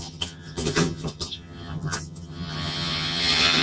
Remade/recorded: remade